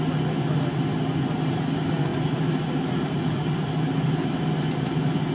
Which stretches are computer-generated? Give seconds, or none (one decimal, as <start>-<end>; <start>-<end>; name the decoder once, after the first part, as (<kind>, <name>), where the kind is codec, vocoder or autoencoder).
none